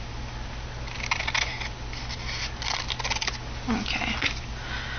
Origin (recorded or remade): recorded